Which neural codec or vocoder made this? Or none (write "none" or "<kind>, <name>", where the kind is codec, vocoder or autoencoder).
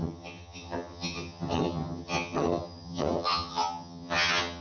vocoder, HiFi-GAN